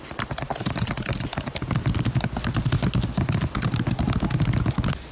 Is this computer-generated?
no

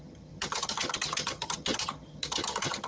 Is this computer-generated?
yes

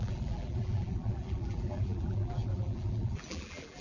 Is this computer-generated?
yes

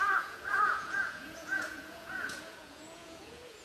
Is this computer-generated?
yes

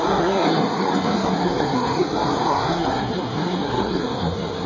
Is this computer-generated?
yes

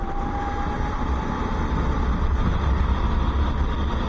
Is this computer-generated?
no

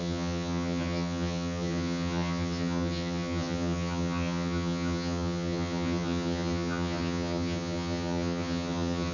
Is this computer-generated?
yes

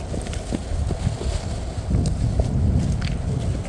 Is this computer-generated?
no